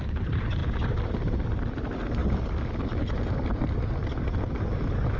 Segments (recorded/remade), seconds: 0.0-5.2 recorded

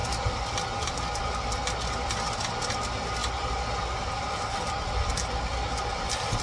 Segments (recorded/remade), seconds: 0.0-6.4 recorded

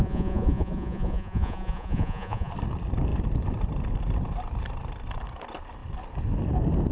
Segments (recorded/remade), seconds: 0.0-2.5 remade; 2.5-6.9 recorded

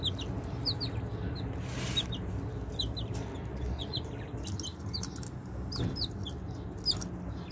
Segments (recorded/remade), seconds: 0.0-3.5 recorded; 3.5-4.1 remade; 4.1-7.5 recorded